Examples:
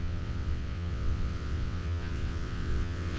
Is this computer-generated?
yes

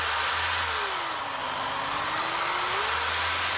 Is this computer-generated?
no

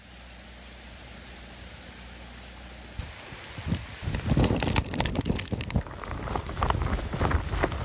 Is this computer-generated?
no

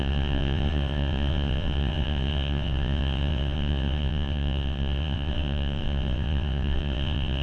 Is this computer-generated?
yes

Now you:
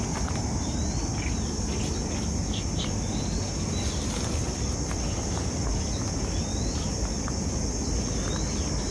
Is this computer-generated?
no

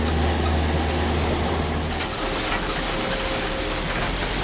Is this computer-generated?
no